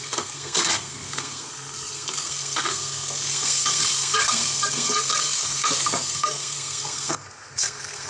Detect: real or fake fake